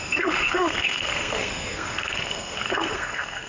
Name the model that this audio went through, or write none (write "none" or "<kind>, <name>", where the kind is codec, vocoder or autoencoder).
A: codec, SNAC